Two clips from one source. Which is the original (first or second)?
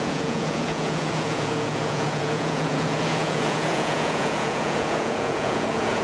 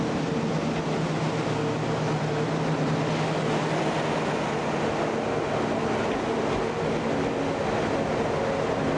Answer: second